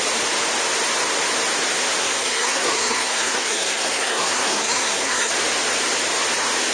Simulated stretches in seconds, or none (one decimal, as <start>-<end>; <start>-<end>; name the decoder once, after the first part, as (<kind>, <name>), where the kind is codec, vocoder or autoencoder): 2.0-5.3 (codec, SNAC)